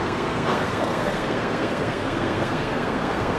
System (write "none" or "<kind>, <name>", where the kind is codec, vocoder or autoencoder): codec, SNAC